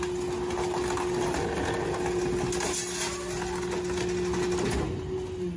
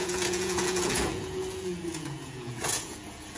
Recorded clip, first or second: first